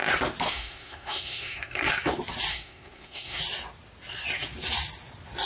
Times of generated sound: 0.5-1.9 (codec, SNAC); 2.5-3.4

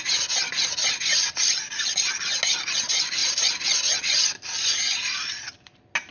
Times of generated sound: none

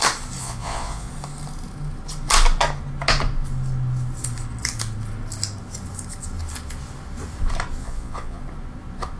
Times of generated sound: 0.4-1.1 (vocoder, Vocos); 7.8-8.4

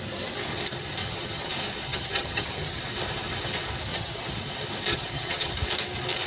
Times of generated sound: 1.0-1.5 (vocoder, HiFi-GAN); 1.9-2.8; 3.9-4.4; 4.9-5.5

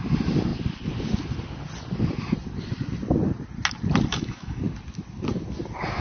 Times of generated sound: 4.1-4.6 (autoencoder, DAC-VAE)

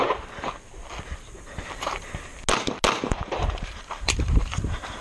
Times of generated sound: 1.6-2.3 (vocoder, BigVGAN v2); 3.1-5.0

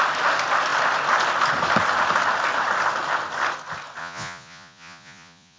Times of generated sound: 4.0-5.6 (vocoder, Vocos)

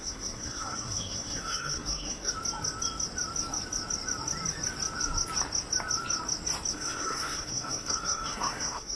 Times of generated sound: 0.0-2.3 (codec, SNAC); 6.7-9.0